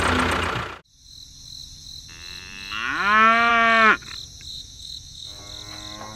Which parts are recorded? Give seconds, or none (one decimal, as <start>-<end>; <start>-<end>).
0.0-4.5; 5.4-6.2